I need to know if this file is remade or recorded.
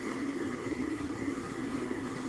remade